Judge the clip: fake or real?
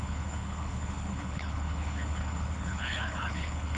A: fake